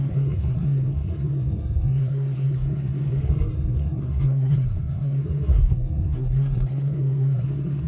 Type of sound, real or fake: fake